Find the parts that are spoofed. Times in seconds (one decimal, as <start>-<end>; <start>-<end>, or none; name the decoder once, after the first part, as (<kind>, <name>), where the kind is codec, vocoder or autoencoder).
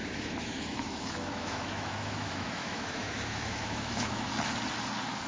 0.0-4.3 (autoencoder, DAC-VAE)